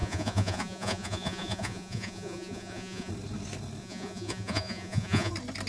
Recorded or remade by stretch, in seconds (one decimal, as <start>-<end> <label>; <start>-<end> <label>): 0.0-3.1 remade; 3.1-3.8 recorded; 3.8-5.3 remade; 5.3-5.7 recorded